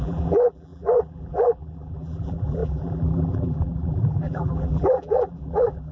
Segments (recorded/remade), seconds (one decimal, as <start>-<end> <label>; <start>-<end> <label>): 0.0-5.9 remade